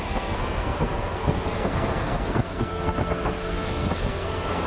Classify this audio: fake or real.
fake